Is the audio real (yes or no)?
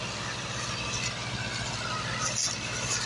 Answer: yes